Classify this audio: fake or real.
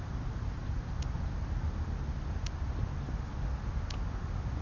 real